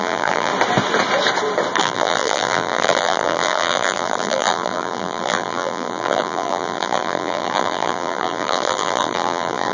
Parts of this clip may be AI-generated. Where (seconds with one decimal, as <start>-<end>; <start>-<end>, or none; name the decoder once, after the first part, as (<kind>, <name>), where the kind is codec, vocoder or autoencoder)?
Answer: 0.0-0.5 (vocoder, BigVGAN v2); 1.8-9.7